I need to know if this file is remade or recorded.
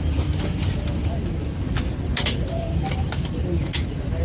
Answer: recorded